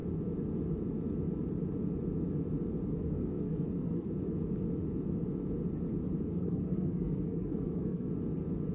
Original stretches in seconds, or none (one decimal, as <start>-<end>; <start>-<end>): 0.0-2.9; 4.1-6.3; 8.1-8.7